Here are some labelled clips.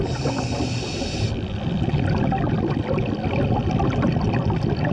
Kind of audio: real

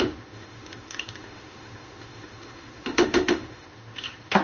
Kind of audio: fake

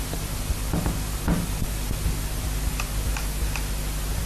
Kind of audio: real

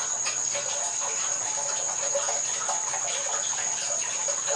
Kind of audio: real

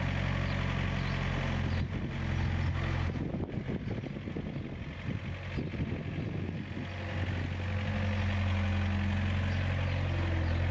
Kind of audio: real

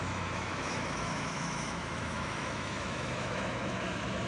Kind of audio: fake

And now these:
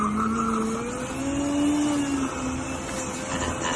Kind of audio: real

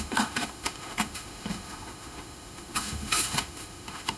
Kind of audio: fake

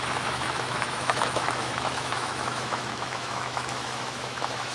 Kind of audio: fake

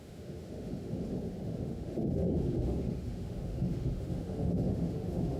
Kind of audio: fake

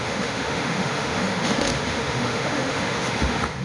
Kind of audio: fake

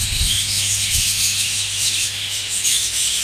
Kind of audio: fake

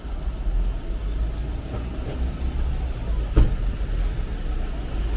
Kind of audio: real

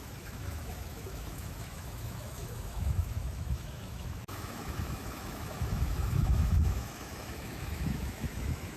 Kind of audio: fake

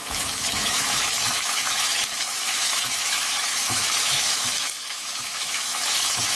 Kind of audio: fake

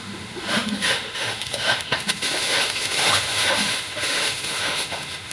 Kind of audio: fake